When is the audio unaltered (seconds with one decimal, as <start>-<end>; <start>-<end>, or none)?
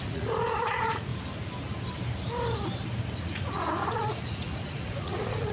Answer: 1.1-3.2